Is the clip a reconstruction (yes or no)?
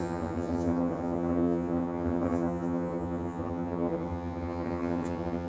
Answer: yes